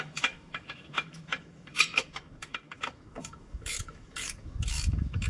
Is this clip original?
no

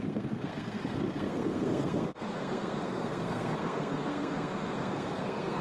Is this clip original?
no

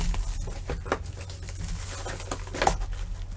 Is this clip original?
yes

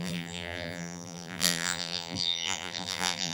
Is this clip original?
no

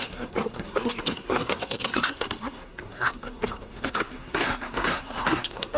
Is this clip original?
no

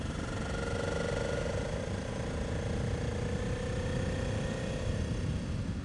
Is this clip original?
yes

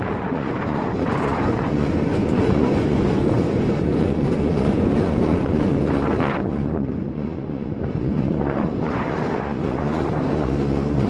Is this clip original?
no